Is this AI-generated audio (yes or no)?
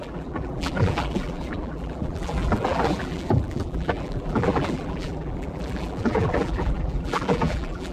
yes